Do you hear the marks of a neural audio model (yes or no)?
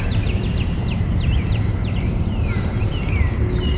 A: yes